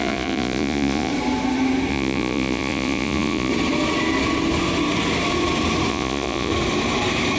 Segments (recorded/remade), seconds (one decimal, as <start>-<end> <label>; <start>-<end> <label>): 0.0-1.1 remade; 1.1-1.9 recorded; 1.9-3.5 remade; 3.5-5.9 recorded; 5.9-6.5 remade; 6.5-7.4 recorded